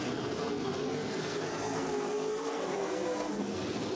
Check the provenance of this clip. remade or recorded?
remade